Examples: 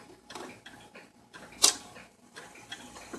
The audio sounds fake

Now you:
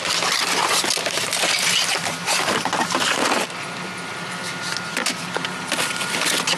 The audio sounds fake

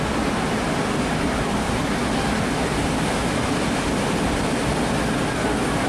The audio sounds real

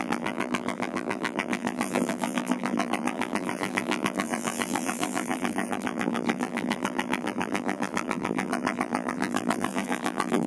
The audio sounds fake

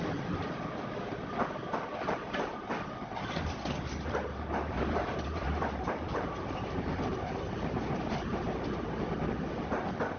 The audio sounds real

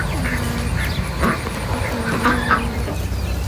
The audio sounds real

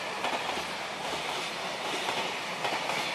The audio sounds real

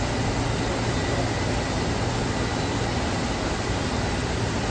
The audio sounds real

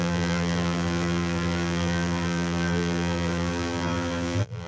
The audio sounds fake